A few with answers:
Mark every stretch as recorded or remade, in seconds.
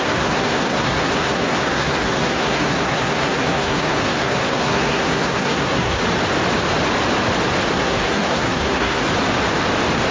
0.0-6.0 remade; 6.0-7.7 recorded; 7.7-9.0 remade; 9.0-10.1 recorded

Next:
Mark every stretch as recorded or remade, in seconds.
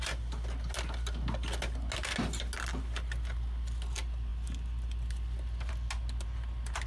0.0-6.9 recorded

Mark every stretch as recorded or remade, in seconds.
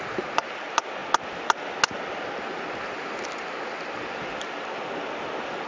0.0-5.7 recorded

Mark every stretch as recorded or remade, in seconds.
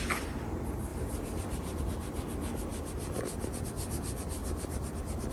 0.0-0.9 recorded; 0.9-1.8 remade; 1.8-4.4 recorded; 4.4-5.3 remade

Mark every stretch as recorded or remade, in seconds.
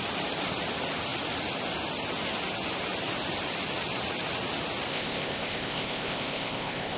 0.0-4.9 recorded; 4.9-7.0 remade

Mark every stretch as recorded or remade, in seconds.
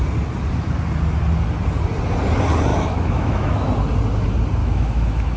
0.0-2.7 recorded; 2.7-3.7 remade; 3.7-4.6 recorded; 4.6-5.4 remade